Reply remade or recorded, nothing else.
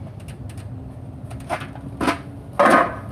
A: recorded